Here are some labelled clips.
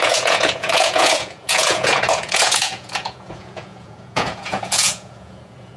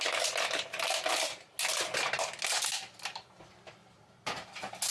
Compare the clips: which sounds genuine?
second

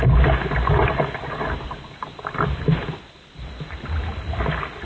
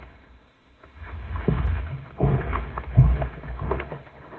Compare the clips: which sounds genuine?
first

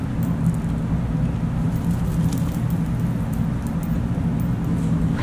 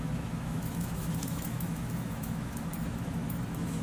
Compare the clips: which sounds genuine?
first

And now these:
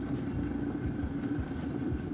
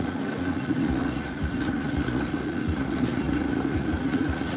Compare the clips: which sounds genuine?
first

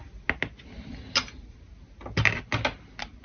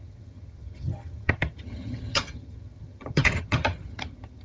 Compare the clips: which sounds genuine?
first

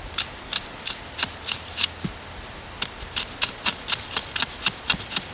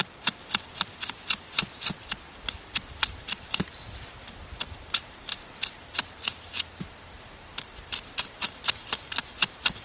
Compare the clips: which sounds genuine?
first